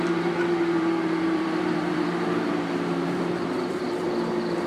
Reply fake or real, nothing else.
fake